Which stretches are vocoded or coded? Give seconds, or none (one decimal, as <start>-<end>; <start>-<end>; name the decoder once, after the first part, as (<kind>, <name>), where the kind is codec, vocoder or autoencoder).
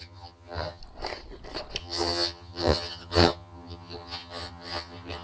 0.0-0.8 (vocoder, HiFi-GAN); 1.8-5.2